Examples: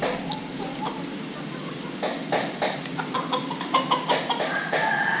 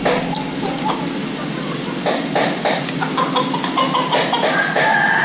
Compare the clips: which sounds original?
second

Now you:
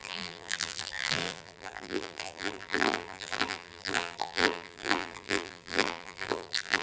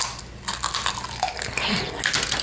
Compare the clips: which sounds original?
second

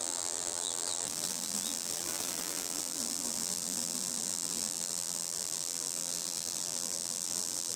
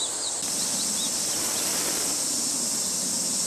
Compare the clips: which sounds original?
second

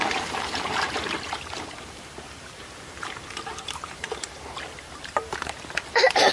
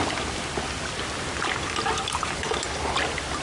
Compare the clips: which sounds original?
second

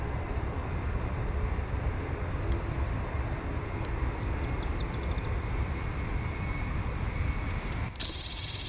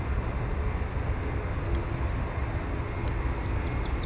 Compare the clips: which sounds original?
second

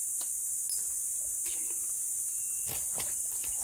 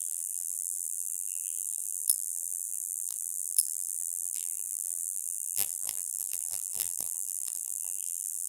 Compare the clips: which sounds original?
first